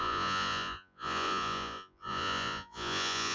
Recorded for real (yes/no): no